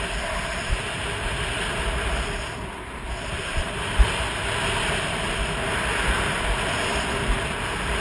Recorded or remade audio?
recorded